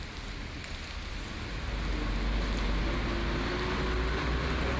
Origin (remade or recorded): recorded